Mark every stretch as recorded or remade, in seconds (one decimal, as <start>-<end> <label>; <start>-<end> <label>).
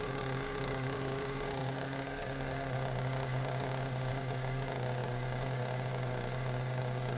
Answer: 0.0-7.2 remade